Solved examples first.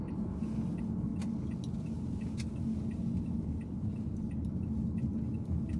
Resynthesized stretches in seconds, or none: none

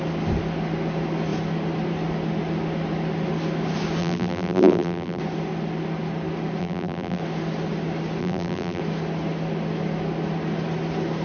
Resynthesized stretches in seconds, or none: 4.0-5.2 (vocoder, BigVGAN v2); 6.6-7.2; 8.2-8.8

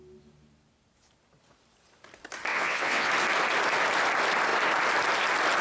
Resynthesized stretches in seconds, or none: 2.5-3.1 (vocoder, WaveNeXt)

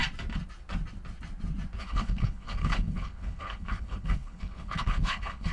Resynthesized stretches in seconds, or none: 1.8-5.5 (codec, HILCodec)